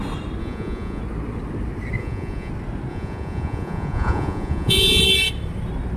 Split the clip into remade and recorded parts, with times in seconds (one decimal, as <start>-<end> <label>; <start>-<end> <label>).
0.0-0.4 recorded; 0.4-1.0 remade; 1.0-2.0 recorded; 2.0-2.5 remade; 2.5-2.9 recorded; 2.9-5.0 remade; 5.0-6.0 recorded